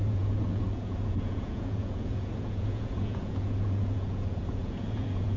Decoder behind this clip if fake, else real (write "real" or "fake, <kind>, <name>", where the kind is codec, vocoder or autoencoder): fake, vocoder, Vocos